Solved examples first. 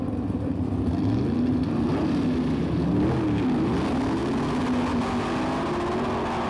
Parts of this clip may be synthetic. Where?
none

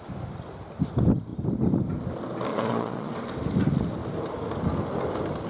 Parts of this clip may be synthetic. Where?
2.5-3.1 (vocoder, Vocos)

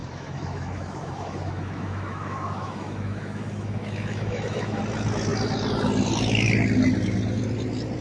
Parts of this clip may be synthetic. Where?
0.0-4.8 (autoencoder, DAC-VAE)

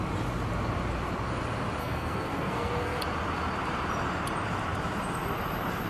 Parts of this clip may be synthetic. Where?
1.8-3.0 (codec, SNAC)

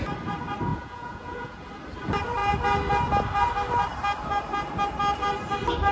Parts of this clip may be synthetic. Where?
0.7-1.7 (vocoder, Vocos)

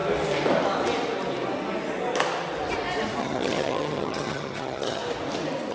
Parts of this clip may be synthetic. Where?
3.2-5.0 (vocoder, HiFi-GAN)

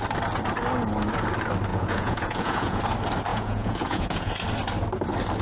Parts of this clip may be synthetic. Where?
1.7-2.8 (vocoder, Vocos); 3.3-4.3